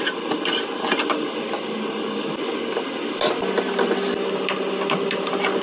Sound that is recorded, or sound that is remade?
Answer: recorded